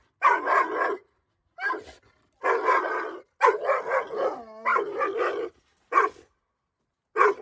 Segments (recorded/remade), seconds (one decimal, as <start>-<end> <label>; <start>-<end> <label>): 0.0-7.4 recorded